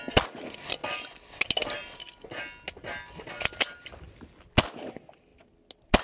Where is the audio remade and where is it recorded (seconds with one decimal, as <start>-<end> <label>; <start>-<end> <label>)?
0.0-6.0 recorded